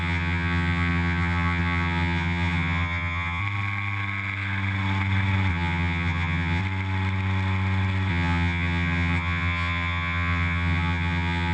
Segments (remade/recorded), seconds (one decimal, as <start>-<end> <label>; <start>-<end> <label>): 0.0-3.4 remade; 3.4-5.5 recorded; 5.5-6.6 remade; 6.6-8.1 recorded; 8.1-11.5 remade